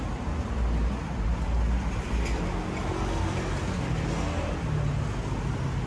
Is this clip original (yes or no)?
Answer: yes